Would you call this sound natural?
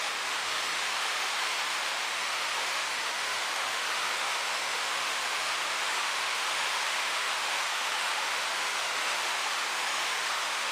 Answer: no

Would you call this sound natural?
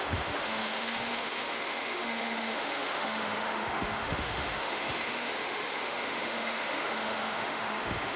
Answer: no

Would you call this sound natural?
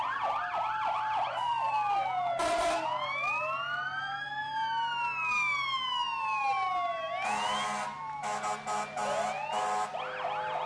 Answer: yes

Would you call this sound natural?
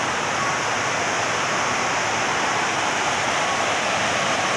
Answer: yes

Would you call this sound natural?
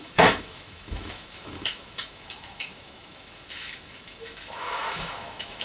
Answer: no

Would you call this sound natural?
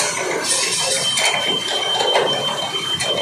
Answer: yes